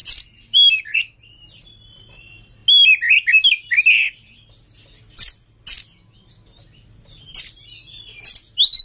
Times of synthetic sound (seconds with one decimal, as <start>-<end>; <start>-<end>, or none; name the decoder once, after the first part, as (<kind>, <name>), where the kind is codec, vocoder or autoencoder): 0.0-0.8 (vocoder, BigVGAN v2)